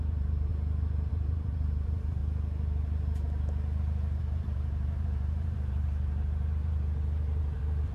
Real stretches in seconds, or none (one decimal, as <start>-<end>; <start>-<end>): 0.5-1.1; 2.2-4.2